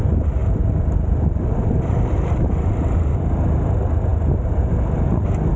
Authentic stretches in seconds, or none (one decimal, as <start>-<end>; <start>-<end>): 0.0-0.4; 2.5-5.6